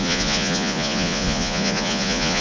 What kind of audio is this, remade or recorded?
remade